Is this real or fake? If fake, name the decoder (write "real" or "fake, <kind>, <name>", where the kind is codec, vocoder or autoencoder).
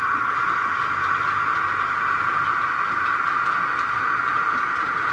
real